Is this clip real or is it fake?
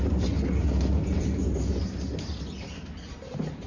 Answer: real